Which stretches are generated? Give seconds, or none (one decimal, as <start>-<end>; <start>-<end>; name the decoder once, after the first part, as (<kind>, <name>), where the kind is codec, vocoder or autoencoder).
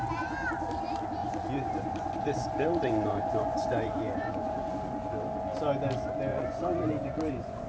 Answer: 1.2-4.7 (vocoder, Vocos); 6.3-7.7